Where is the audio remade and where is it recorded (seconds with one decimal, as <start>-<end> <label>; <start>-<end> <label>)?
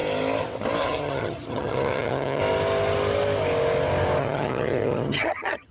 0.0-0.8 recorded; 0.8-2.4 remade; 2.4-4.2 recorded; 4.2-5.7 remade